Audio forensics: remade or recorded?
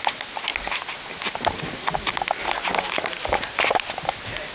recorded